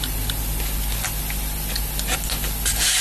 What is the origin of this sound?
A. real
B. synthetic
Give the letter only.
A